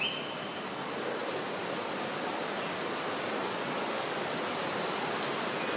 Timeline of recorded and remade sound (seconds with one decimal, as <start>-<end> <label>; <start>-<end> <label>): 0.0-3.4 recorded; 3.4-4.0 remade; 4.0-5.8 recorded